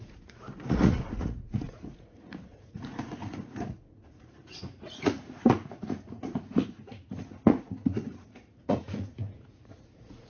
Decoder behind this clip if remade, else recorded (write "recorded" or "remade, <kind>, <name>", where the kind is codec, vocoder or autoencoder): remade, vocoder, Vocos